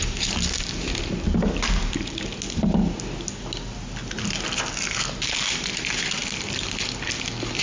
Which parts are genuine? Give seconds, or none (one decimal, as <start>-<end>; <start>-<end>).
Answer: 0.0-7.6